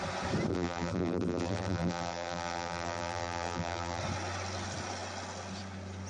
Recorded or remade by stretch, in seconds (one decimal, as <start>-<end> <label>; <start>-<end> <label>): 0.0-0.5 recorded; 0.5-4.0 remade; 4.0-6.1 recorded